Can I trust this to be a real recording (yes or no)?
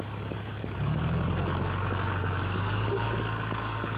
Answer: no